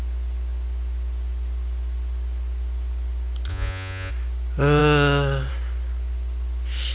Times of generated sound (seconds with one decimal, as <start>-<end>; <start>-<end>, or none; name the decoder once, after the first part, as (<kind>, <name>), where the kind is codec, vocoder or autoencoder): 3.5-4.1 (vocoder, Vocos)